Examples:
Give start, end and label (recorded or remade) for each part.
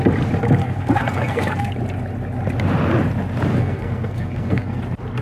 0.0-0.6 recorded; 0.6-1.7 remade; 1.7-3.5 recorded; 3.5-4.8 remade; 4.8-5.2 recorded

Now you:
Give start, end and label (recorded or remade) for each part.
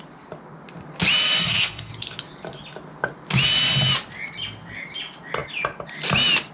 0.0-1.4 recorded; 1.4-1.9 remade; 1.9-6.5 recorded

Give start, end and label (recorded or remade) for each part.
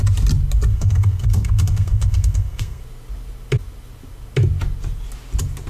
0.0-0.7 recorded; 0.7-2.8 remade; 2.8-5.7 recorded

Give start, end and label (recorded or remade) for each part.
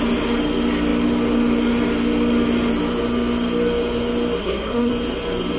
0.0-4.4 recorded; 4.4-4.9 remade; 4.9-5.6 recorded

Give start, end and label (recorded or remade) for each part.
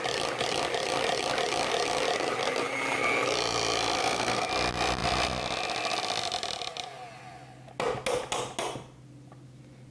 0.0-4.0 recorded; 4.0-4.5 remade; 4.5-9.9 recorded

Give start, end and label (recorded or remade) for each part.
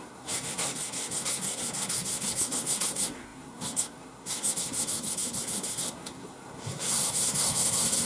0.0-8.1 remade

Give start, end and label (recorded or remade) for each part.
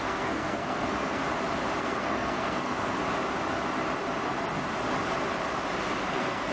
0.0-1.2 remade; 1.2-1.8 recorded; 1.8-3.0 remade; 3.0-6.1 recorded; 6.1-6.5 remade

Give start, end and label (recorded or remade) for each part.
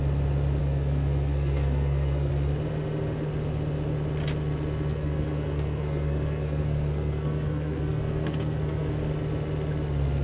0.0-0.6 recorded; 0.6-2.3 remade; 2.3-4.9 recorded; 4.9-9.1 remade; 9.1-10.2 recorded